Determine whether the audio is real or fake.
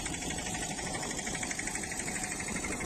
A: fake